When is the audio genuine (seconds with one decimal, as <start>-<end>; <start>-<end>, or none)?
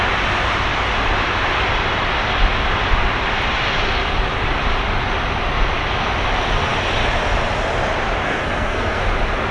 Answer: 0.0-8.2; 9.1-9.5